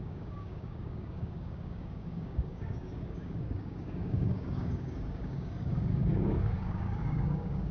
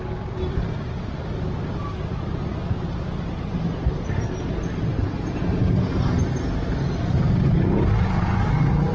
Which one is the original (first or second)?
second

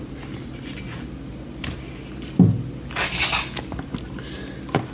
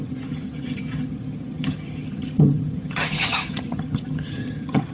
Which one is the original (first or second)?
first